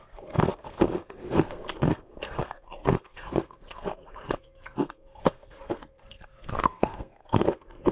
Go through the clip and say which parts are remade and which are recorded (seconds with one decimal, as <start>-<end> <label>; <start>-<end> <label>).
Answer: 0.0-7.9 remade